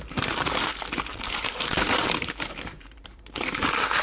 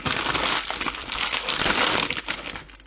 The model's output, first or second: first